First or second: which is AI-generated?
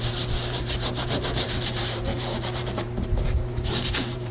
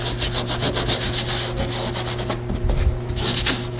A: first